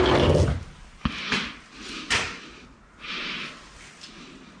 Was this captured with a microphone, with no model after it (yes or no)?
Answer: yes